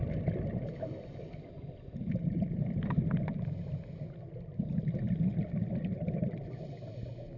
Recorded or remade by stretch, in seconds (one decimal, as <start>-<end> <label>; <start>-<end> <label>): 0.0-7.4 recorded